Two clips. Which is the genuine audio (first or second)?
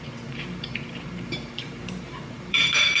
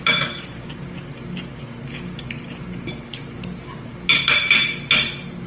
second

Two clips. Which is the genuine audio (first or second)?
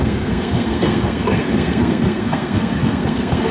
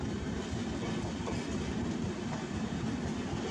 second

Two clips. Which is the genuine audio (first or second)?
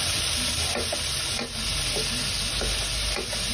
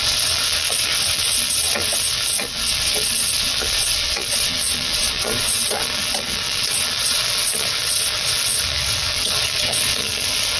first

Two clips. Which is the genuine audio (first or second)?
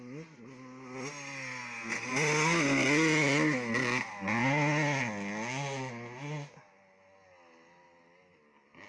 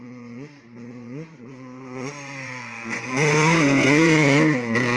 first